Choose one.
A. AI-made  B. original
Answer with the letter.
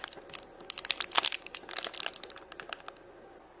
B